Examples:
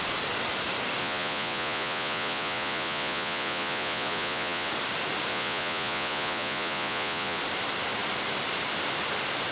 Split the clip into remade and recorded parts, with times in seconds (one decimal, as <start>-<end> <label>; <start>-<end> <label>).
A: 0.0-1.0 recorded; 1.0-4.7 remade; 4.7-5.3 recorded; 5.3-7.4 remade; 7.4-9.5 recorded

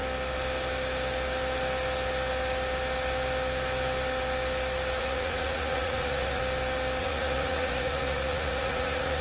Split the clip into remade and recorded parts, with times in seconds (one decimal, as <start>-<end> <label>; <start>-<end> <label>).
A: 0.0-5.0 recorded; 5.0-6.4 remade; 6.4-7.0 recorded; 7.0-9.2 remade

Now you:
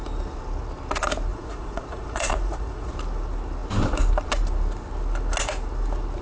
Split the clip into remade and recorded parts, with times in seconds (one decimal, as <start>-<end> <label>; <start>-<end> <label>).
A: 0.0-1.3 recorded; 1.3-2.9 remade; 2.9-6.2 recorded